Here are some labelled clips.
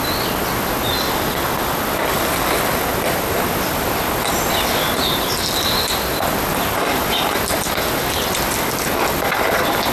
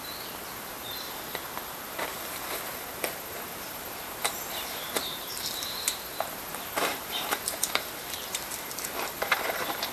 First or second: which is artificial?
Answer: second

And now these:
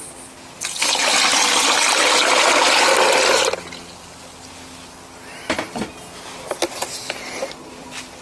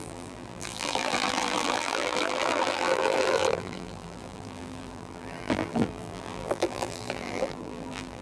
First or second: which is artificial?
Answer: second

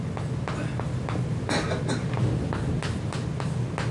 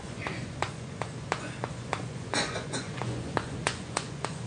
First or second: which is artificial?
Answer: second